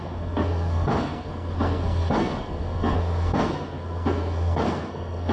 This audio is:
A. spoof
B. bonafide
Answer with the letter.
A